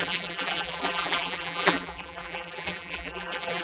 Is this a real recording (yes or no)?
no